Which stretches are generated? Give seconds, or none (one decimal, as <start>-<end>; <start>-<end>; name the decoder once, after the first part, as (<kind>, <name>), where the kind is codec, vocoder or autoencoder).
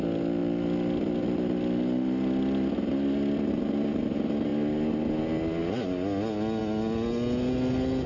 none